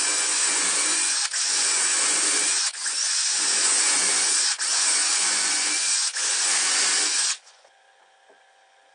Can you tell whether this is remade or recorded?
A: remade